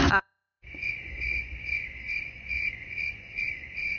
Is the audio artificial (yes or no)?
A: yes